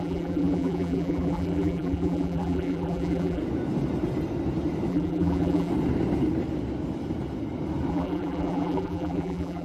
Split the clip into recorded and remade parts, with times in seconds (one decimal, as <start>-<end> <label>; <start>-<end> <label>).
0.0-3.4 remade; 3.4-4.9 recorded; 4.9-5.7 remade; 5.7-7.9 recorded; 7.9-9.6 remade